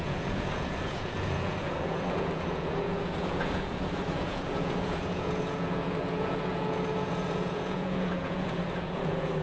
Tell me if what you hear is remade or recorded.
remade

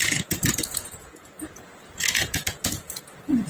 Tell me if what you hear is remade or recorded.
remade